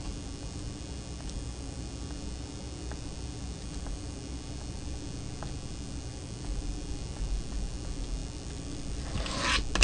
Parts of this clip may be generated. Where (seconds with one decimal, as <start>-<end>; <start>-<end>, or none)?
none